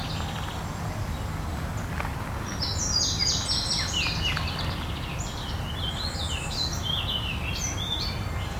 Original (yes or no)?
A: yes